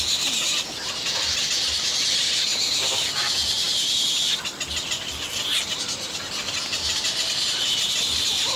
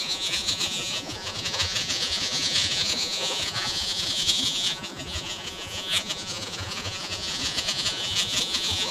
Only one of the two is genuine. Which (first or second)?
first